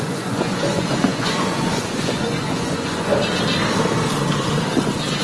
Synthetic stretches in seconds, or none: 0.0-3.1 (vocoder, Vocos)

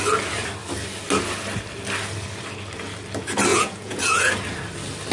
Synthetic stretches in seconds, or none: 3.5-4.3 (vocoder, Vocos)

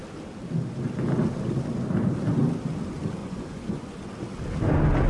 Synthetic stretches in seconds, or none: 3.2-4.1 (vocoder, Vocos)

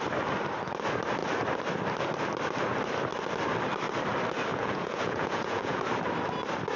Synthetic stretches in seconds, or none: 4.5-5.8 (vocoder, Vocos)

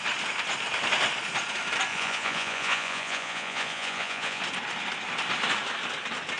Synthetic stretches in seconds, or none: 1.9-4.4 (vocoder, Vocos)

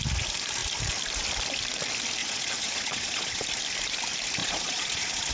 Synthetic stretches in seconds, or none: 2.2-3.4 (vocoder, Vocos); 4.4-5.3

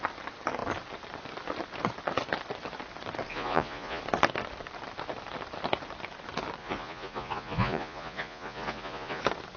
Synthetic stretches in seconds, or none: 3.3-4.0 (vocoder, Vocos); 6.6-9.2

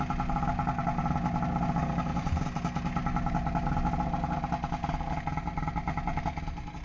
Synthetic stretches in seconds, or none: none